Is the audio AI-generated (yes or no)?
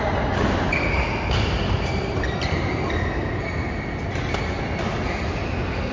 no